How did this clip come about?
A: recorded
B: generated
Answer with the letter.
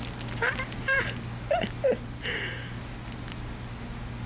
A